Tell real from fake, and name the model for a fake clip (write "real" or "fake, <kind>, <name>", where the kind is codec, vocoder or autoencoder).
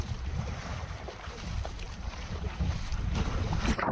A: fake, vocoder, BigVGAN v2